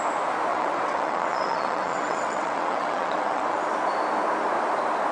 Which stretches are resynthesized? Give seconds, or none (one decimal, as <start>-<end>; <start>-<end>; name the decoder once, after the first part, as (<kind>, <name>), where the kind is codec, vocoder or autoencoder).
0.5-3.6 (vocoder, WaveNeXt)